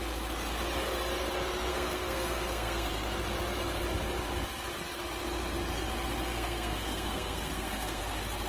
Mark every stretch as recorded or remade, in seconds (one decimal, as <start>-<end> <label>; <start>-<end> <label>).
0.0-1.7 recorded; 1.7-2.9 remade; 2.9-6.3 recorded; 6.3-8.0 remade; 8.0-8.5 recorded